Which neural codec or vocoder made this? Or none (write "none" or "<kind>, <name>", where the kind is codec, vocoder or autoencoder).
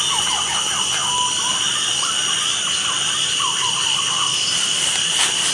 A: none